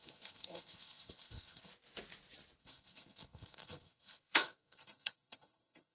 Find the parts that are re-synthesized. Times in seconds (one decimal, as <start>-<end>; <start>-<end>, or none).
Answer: 0.0-1.7; 2.6-5.9